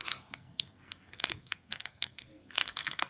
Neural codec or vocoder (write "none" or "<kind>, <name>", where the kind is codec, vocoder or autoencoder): codec, SNAC